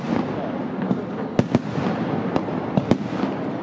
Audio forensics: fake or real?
real